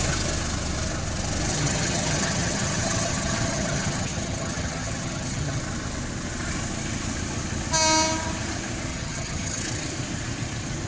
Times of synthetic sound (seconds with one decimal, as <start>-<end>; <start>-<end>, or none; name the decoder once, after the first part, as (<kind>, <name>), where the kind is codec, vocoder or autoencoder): 1.5-5.6 (vocoder, HiFi-GAN); 8.9-9.6